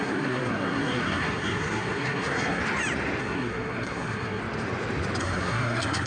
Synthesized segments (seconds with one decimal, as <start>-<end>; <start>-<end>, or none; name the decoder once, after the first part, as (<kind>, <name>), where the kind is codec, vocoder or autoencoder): 0.0-2.6 (codec, SNAC); 3.2-4.4; 5.2-6.1